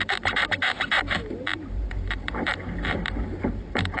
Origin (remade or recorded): remade